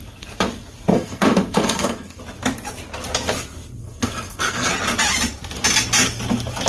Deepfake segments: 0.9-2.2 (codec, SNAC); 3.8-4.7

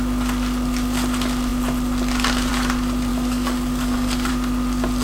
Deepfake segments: 3.1-4.3 (codec, DAC)